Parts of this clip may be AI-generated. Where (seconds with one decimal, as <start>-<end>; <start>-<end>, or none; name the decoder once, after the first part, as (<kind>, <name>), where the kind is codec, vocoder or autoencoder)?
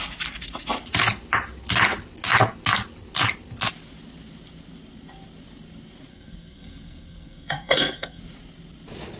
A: 6.1-8.2 (codec, SNAC)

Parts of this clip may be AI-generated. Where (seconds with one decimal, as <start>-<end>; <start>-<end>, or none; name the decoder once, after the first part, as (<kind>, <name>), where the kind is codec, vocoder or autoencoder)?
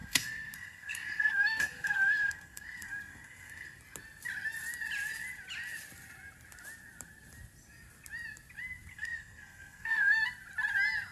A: 0.0-3.8 (codec, SNAC); 8.9-10.2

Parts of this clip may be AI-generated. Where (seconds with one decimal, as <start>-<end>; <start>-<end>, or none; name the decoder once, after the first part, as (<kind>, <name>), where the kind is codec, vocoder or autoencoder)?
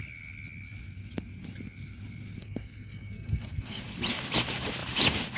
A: 2.4-3.8 (codec, SNAC)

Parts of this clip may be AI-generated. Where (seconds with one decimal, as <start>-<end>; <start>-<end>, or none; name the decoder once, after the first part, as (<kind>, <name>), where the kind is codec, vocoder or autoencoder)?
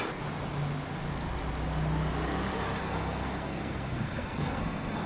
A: 2.8-5.1 (codec, SNAC)